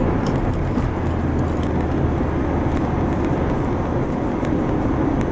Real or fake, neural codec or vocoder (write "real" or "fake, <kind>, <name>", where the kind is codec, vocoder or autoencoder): real